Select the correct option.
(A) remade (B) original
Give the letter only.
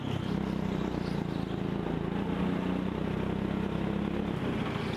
B